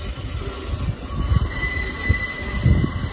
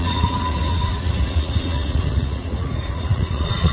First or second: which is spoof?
second